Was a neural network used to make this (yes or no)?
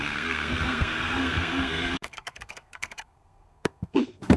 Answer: yes